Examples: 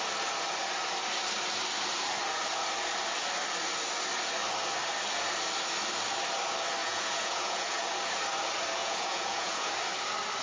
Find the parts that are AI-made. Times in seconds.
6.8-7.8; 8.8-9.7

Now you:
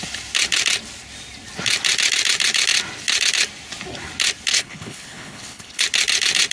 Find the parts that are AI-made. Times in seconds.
4.5-5.8

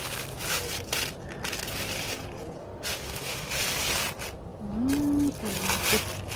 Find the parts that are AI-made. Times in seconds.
2.6-3.6

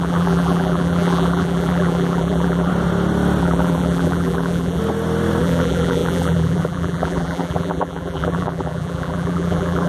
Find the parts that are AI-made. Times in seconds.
0.0-2.7; 3.4-4.8; 5.4-9.9

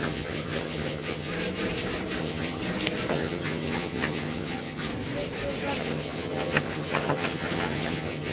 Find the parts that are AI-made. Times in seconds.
0.0-1.3; 2.2-2.6; 3.1-4.9; 5.8-8.3

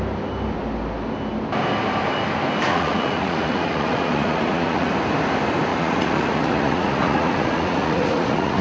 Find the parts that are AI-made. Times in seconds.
2.7-4.9; 5.7-8.6